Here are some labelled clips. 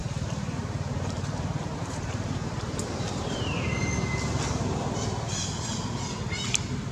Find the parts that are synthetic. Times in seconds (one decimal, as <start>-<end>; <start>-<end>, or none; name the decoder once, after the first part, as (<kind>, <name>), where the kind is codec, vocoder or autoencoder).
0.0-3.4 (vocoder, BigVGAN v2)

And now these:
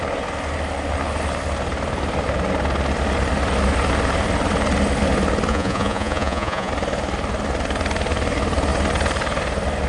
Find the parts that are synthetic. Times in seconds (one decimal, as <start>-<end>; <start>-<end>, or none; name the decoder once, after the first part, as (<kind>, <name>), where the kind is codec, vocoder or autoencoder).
5.5-6.7 (vocoder, Vocos)

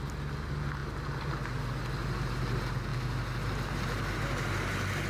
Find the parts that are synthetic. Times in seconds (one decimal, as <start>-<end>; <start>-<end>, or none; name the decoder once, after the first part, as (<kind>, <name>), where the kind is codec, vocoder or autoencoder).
none